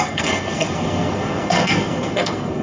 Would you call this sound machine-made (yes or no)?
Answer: yes